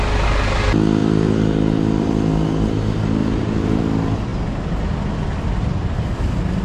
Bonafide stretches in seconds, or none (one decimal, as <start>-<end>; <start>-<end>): 0.0-1.0; 2.1-3.2; 3.8-6.6